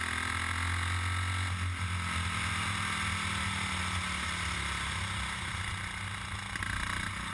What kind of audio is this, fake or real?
real